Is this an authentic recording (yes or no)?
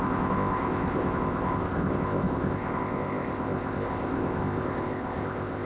no